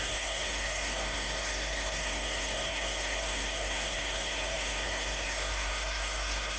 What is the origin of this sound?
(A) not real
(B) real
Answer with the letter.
A